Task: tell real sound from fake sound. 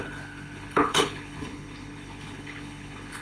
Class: fake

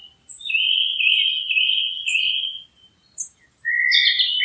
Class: real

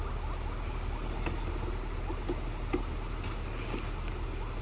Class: real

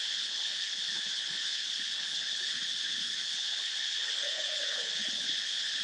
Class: fake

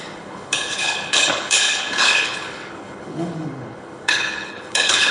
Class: fake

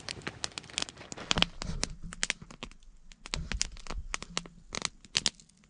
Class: real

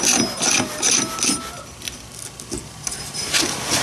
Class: real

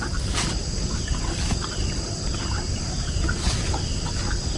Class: real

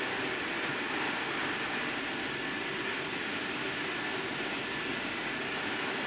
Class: real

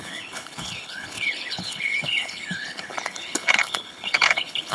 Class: fake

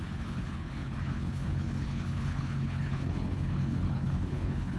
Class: fake